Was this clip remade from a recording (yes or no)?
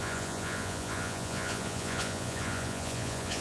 yes